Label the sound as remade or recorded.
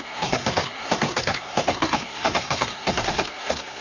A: remade